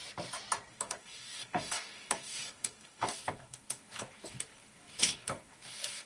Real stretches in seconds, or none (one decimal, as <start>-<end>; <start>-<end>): 0.0-0.7